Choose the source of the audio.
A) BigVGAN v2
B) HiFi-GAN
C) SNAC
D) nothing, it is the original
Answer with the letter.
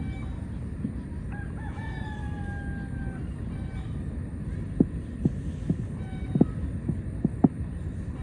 D